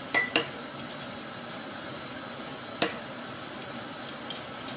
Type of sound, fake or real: real